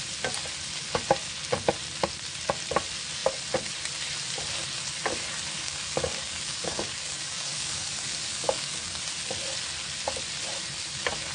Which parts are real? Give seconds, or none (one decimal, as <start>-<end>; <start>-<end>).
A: 0.0-5.5; 9.0-11.3